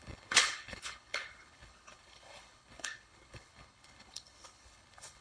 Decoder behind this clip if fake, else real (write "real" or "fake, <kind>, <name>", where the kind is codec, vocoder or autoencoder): fake, codec, HILCodec